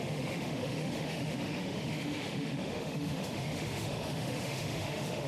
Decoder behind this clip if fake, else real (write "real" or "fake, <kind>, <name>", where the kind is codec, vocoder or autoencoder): fake, autoencoder, DAC-VAE